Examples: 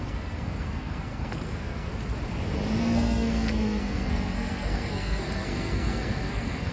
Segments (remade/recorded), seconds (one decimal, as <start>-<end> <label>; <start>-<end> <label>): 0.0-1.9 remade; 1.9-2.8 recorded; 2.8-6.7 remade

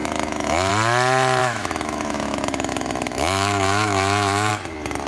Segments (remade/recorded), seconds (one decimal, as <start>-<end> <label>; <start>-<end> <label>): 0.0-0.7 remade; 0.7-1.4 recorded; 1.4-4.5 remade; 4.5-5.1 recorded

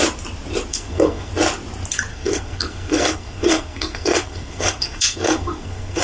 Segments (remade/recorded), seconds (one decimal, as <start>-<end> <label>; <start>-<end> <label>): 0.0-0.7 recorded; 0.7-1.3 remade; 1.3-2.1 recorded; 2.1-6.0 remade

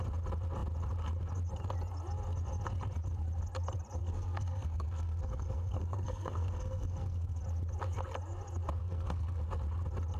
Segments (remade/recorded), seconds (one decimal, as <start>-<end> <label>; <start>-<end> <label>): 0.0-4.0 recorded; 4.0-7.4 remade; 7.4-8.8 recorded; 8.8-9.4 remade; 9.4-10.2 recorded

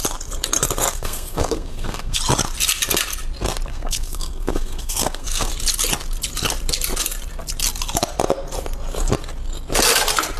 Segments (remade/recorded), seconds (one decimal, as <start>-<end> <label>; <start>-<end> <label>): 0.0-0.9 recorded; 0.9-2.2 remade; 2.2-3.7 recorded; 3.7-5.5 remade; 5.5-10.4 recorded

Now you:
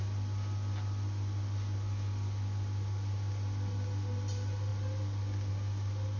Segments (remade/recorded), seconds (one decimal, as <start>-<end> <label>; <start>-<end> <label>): 0.0-6.2 recorded